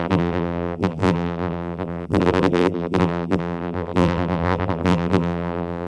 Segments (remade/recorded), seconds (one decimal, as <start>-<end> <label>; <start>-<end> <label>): 0.0-5.9 remade